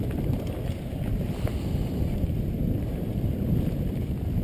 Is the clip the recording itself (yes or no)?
yes